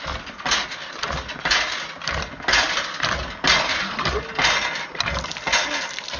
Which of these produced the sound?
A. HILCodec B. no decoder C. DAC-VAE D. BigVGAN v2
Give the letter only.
B